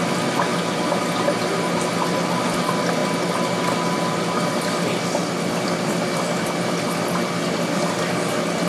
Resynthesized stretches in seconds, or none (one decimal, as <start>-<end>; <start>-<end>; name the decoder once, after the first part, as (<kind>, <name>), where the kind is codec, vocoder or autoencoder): none